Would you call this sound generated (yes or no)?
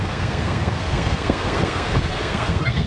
yes